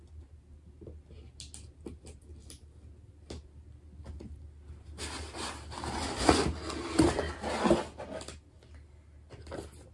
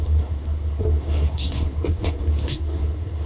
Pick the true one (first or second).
first